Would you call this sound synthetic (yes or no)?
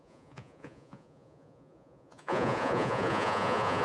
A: yes